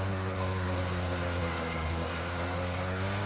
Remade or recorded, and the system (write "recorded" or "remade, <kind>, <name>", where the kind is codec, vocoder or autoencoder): remade, codec, SNAC